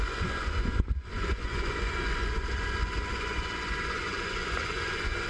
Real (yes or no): no